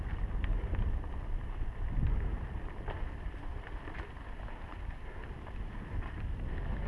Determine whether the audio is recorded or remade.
recorded